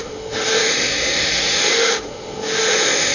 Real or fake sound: fake